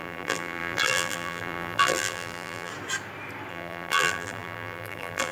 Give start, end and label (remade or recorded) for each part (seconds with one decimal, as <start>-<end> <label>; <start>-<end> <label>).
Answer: 0.0-2.7 remade; 2.7-3.5 recorded; 3.5-5.3 remade